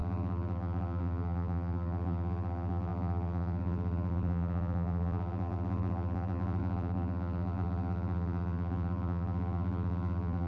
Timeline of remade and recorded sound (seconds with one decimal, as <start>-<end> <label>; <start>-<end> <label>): 0.0-10.5 remade